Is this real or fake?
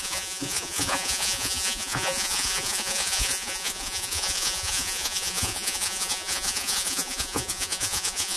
fake